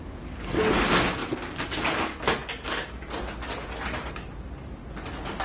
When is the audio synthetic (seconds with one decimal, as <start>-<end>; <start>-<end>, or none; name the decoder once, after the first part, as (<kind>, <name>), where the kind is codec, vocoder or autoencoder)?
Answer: none